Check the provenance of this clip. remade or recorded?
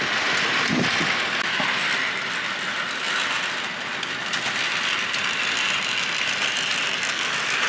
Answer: recorded